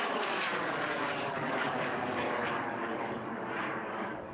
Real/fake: fake